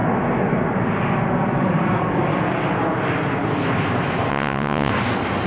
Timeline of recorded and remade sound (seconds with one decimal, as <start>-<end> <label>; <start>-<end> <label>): 0.0-4.3 recorded; 4.3-4.9 remade; 4.9-5.5 recorded